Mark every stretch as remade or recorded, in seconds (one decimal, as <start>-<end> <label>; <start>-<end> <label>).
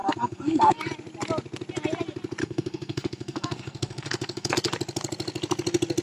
0.0-0.9 remade; 0.9-2.4 recorded; 2.4-4.5 remade; 4.5-6.0 recorded